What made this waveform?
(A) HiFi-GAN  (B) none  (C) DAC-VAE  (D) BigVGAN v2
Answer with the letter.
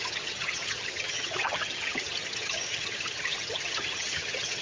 A